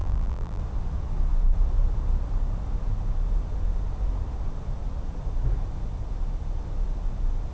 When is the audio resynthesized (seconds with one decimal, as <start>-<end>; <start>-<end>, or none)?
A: 0.0-0.6